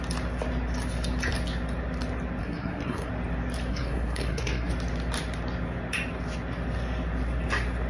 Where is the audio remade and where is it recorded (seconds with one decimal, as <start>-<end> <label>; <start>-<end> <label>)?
0.0-2.4 recorded; 2.4-3.1 remade; 3.1-3.7 recorded; 3.7-4.7 remade; 4.7-7.9 recorded